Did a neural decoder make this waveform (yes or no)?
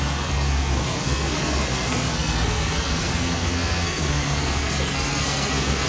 yes